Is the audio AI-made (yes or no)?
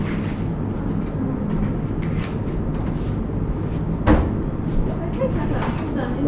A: no